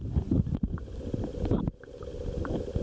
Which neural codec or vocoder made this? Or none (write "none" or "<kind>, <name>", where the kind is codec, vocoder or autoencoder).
none